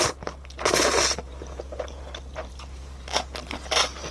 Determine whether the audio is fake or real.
fake